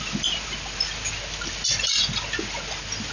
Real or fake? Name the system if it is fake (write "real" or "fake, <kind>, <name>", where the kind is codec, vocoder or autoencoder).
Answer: real